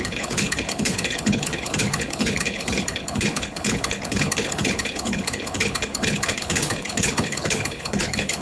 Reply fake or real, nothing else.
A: fake